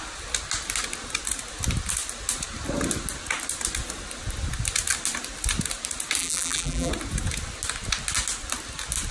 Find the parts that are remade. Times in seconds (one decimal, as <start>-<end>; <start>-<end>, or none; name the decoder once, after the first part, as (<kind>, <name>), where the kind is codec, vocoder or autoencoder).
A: 6.2-6.9 (vocoder, BigVGAN v2)